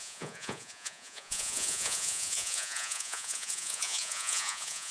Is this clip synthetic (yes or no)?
yes